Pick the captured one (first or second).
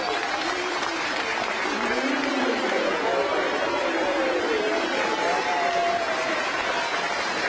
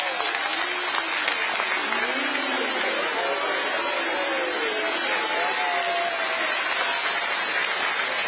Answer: second